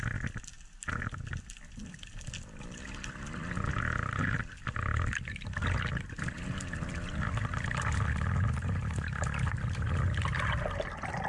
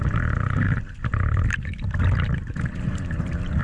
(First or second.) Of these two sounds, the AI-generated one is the second